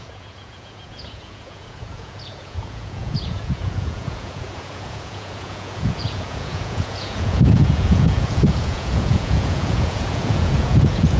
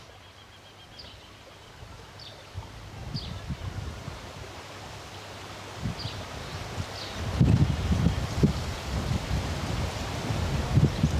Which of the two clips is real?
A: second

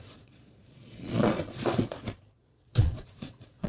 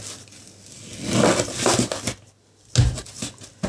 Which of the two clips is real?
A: second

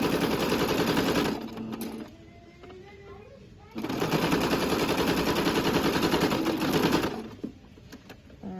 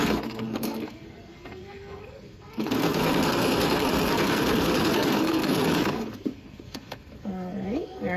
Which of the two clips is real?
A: first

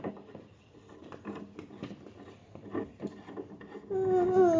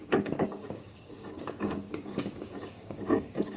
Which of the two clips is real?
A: first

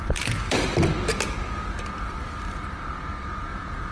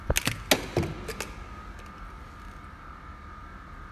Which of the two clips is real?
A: second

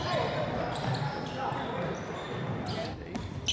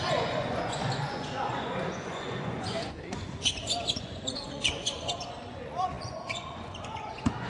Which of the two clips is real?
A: first